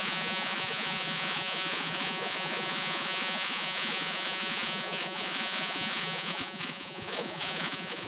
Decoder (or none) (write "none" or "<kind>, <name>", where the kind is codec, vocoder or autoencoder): vocoder, Vocos